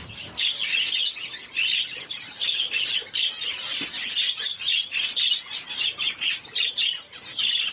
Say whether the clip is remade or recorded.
remade